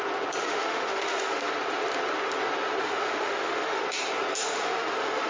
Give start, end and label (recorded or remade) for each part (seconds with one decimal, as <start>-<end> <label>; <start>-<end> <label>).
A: 0.0-0.4 recorded; 0.4-1.5 remade; 1.5-2.8 recorded; 2.8-3.8 remade; 3.8-4.3 recorded; 4.3-5.3 remade